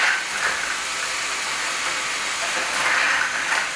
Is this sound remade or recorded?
recorded